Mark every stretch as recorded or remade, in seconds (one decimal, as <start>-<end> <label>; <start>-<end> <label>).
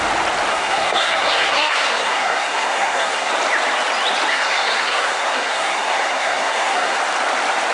0.0-0.5 recorded; 0.5-3.3 remade; 3.3-4.3 recorded; 4.3-7.0 remade; 7.0-7.7 recorded